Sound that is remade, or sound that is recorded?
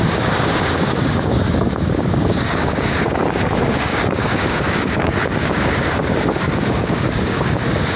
remade